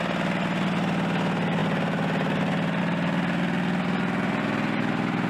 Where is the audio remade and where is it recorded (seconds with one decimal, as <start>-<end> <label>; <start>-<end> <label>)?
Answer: 0.0-5.3 recorded